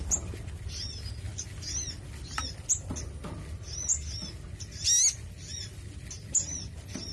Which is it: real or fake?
real